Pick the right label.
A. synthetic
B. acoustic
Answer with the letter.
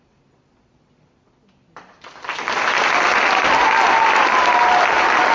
B